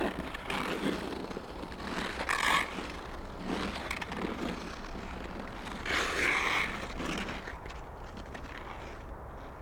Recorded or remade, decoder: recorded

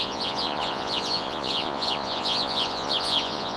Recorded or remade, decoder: remade, vocoder, Vocos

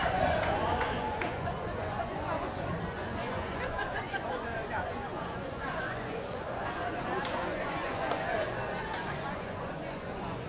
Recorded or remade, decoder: remade, vocoder, Vocos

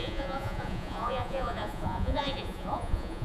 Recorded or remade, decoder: remade, vocoder, Vocos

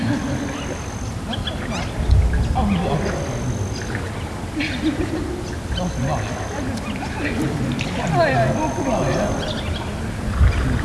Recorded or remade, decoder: recorded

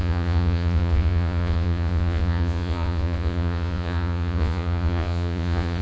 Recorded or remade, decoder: remade, vocoder, Vocos